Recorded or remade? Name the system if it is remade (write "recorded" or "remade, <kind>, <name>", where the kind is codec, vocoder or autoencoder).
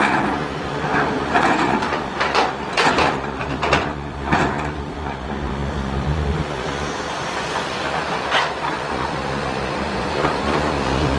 remade, vocoder, Vocos